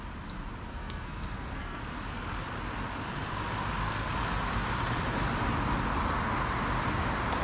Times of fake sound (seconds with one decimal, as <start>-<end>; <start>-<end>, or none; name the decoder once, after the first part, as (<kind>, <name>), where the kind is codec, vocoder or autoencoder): 0.7-1.8 (codec, SNAC)